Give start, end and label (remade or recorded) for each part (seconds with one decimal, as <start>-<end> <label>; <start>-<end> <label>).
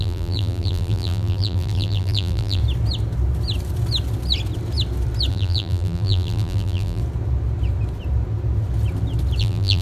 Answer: 0.0-2.6 remade; 2.6-5.3 recorded; 5.3-7.0 remade; 7.0-9.4 recorded; 9.4-9.8 remade